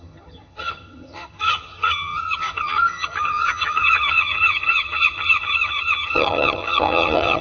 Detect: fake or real fake